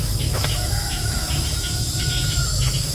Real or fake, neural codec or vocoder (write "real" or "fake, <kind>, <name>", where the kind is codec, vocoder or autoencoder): fake, autoencoder, DAC-VAE